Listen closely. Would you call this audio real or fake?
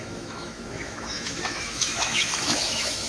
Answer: fake